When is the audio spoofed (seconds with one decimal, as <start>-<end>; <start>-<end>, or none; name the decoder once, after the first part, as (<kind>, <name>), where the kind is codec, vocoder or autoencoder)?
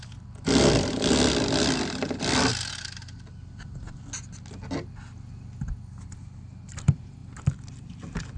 none